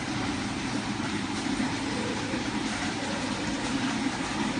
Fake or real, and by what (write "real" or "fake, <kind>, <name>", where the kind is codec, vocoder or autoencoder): fake, vocoder, BigVGAN v2